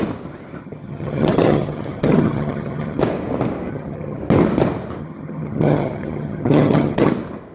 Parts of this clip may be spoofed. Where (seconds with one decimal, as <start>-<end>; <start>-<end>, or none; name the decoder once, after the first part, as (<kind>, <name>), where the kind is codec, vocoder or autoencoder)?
0.6-3.0 (vocoder, HiFi-GAN); 3.7-4.2; 5.0-7.1